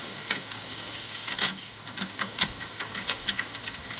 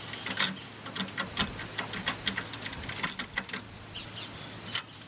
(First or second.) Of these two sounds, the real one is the second